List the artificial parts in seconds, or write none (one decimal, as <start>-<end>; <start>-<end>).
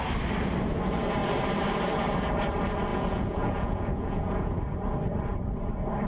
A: 2.9-4.5